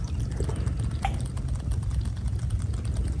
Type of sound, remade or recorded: recorded